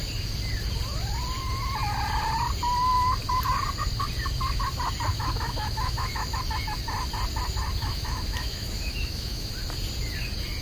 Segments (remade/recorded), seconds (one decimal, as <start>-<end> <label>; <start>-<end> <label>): 0.0-5.1 recorded; 5.1-6.4 remade; 6.4-7.8 recorded; 7.8-9.5 remade; 9.5-10.6 recorded